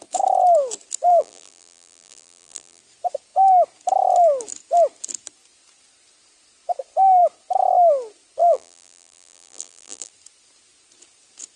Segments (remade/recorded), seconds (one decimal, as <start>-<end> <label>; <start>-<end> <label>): 0.0-1.1 recorded; 1.1-2.8 remade; 2.8-8.4 recorded; 8.4-10.1 remade; 10.1-11.6 recorded